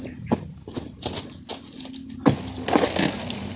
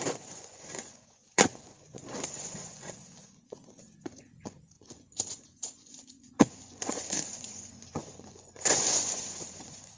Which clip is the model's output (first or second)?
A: second